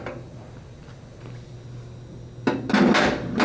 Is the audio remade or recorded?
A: recorded